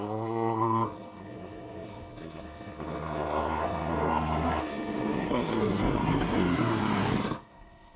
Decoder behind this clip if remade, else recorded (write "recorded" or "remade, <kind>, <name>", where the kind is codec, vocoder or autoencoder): remade, codec, SNAC